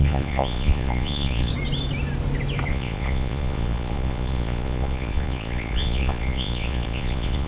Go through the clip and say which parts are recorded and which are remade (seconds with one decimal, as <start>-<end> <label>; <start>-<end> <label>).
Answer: 0.0-1.5 remade; 1.5-2.7 recorded; 2.7-7.5 remade